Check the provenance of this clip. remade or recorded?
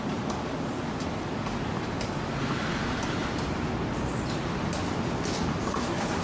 recorded